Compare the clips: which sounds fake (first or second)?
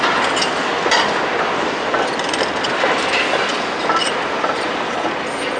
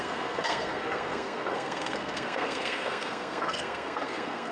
second